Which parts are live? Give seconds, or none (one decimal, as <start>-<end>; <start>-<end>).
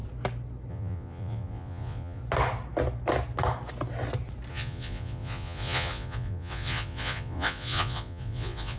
0.0-0.7; 2.2-4.5